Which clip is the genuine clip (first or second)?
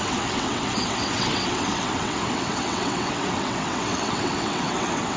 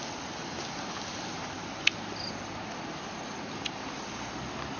second